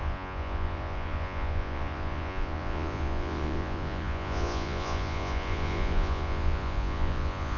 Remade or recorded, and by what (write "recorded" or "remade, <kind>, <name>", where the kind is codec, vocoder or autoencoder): remade, vocoder, Vocos